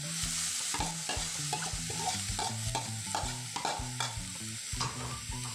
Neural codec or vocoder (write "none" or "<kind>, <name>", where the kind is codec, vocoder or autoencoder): none